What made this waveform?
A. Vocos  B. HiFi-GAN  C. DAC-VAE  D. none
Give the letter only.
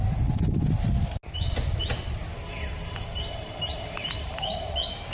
D